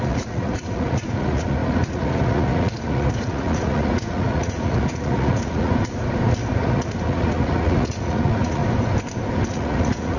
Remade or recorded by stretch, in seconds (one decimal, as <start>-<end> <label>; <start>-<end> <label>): 0.0-6.0 remade; 6.0-6.5 recorded; 6.5-8.6 remade; 8.6-9.5 recorded; 9.5-10.2 remade